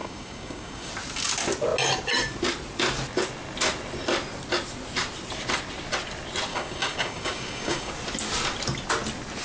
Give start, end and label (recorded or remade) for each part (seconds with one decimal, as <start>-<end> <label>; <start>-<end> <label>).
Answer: 0.0-0.9 remade; 0.9-6.5 recorded; 6.5-7.9 remade; 7.9-9.4 recorded